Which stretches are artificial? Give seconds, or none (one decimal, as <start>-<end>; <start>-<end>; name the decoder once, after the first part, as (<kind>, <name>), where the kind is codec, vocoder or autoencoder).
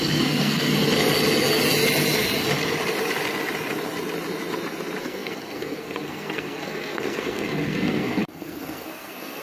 0.0-0.7 (codec, SNAC); 5.0-9.4